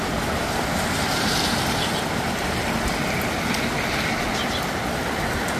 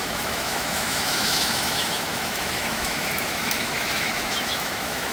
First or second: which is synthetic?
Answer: second